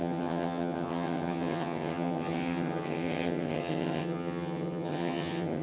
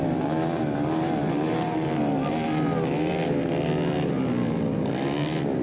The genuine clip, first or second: second